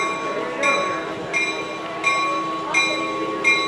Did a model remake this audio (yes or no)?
no